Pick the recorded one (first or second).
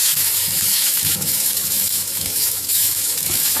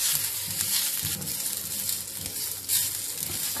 second